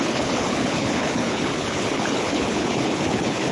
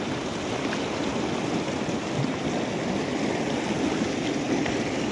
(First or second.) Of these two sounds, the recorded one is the second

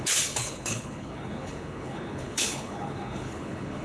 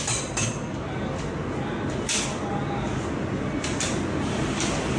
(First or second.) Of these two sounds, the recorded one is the second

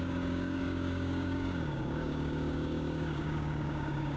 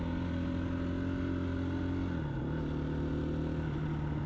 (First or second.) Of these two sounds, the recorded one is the second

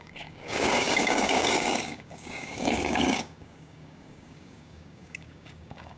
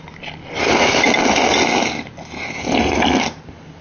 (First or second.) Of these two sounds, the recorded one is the second